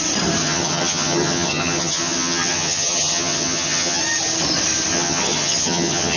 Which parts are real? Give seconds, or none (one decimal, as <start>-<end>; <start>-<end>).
0.0-0.4; 4.0-4.9